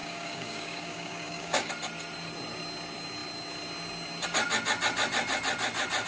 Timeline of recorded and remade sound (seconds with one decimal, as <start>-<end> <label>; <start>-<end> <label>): 0.0-1.7 remade; 1.7-6.1 recorded